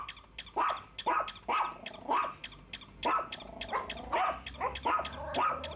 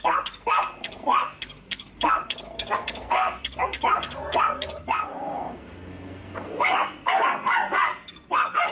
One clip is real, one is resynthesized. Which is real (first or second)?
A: first